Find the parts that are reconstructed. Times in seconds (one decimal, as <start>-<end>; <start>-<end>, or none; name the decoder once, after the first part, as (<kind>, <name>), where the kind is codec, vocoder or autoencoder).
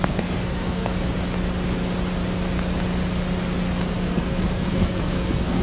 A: 0.0-0.9 (codec, SNAC); 3.9-5.6